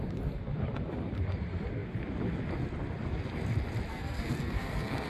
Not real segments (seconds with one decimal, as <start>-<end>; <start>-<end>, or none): 3.9-5.1